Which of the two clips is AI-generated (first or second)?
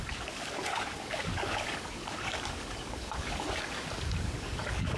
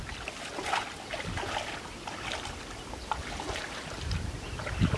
first